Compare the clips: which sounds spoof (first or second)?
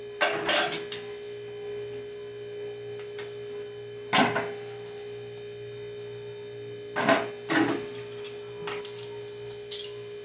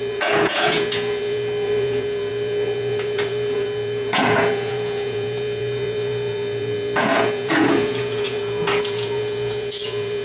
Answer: second